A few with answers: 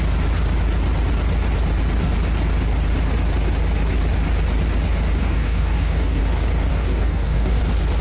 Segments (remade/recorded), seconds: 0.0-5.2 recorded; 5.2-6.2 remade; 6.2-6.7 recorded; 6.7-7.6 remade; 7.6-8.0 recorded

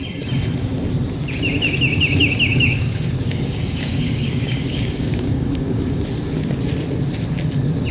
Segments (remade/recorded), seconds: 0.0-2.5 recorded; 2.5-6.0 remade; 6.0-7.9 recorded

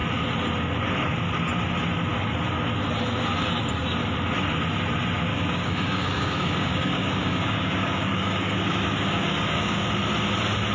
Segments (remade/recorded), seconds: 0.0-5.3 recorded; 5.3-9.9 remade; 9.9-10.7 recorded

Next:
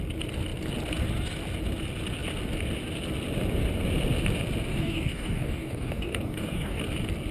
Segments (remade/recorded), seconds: 0.0-4.7 recorded; 4.7-6.8 remade; 6.8-7.3 recorded